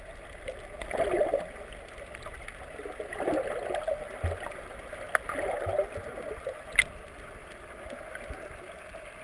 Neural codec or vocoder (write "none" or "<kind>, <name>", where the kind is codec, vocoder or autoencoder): none